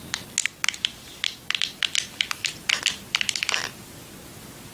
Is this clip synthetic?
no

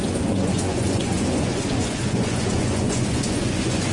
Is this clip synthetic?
yes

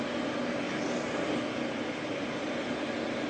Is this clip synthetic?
no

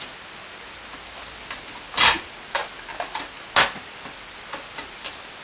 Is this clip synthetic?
no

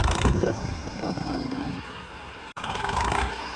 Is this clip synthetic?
yes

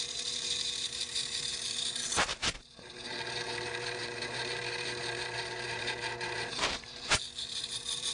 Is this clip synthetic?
yes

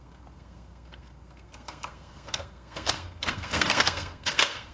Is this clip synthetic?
yes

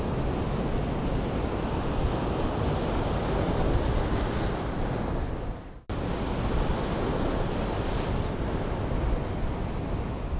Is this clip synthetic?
no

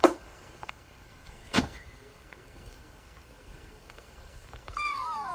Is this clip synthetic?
yes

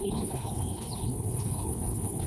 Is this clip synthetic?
yes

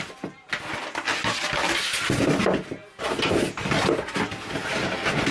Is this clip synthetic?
no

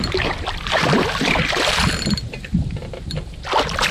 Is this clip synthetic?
yes